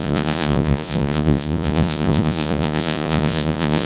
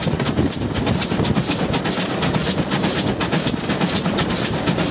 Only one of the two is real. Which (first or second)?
second